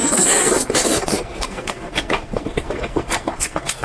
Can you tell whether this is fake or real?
fake